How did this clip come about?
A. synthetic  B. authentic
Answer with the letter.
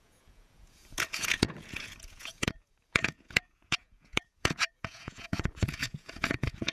A